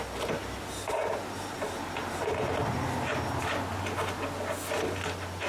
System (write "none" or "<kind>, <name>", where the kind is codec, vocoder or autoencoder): none